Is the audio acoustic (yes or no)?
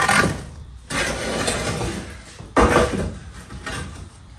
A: yes